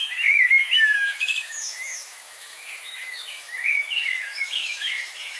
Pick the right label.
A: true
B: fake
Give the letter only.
B